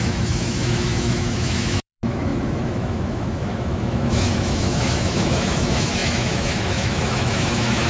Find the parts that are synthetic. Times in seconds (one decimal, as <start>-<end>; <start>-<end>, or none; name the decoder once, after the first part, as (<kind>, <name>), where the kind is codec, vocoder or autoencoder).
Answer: 0.0-7.9 (autoencoder, DAC-VAE)

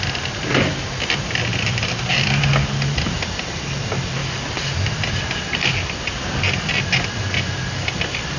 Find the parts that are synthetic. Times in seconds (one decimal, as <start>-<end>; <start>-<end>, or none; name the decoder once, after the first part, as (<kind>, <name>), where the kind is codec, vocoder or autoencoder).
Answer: 1.5-2.4 (vocoder, BigVGAN v2); 4.2-5.1

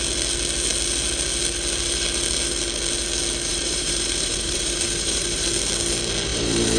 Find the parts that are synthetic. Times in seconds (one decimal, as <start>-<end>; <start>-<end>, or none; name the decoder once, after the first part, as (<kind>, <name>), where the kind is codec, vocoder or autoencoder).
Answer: 3.5-5.5 (vocoder, BigVGAN v2); 6.3-6.8

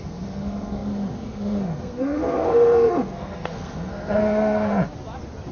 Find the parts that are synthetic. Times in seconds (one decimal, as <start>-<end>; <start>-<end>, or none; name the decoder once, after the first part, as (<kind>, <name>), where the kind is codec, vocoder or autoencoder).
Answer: 0.0-4.7 (codec, SNAC)